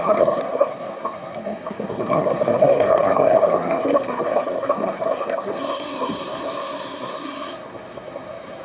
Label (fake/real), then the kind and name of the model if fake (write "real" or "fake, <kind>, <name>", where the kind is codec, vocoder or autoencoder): fake, codec, SNAC